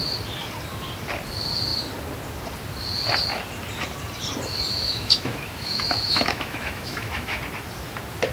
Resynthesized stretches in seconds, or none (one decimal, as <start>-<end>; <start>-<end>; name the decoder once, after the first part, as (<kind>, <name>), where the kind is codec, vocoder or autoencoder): 4.7-7.4 (autoencoder, DAC-VAE)